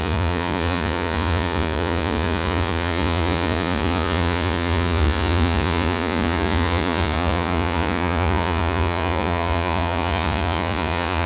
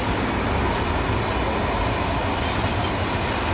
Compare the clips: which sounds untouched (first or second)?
second